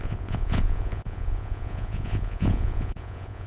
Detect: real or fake fake